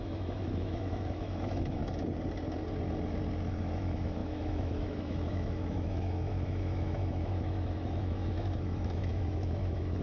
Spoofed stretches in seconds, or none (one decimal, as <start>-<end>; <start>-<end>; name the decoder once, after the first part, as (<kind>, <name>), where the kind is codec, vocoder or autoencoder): 0.0-1.8 (autoencoder, DAC-VAE); 3.6-10.0